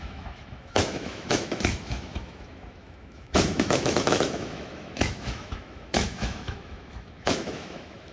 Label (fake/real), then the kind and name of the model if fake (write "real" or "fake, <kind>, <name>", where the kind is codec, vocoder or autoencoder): fake, autoencoder, DAC-VAE